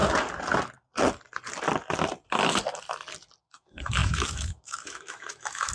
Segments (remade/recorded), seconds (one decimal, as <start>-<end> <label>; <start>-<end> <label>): 0.0-3.4 recorded; 3.4-5.7 remade